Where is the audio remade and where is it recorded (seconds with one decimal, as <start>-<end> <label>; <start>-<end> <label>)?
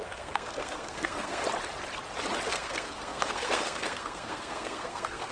0.0-1.4 remade; 1.4-2.5 recorded; 2.5-5.3 remade